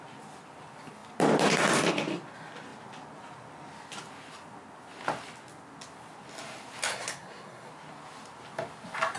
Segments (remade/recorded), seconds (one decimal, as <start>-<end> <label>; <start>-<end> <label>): 0.0-6.9 recorded; 6.9-7.7 remade; 7.7-9.2 recorded